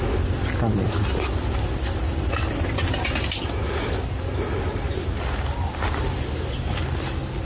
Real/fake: real